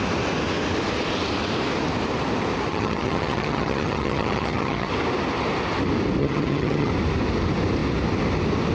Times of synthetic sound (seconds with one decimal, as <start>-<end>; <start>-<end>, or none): 2.7-4.9; 6.2-6.9